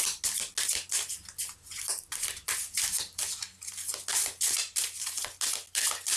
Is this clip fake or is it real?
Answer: real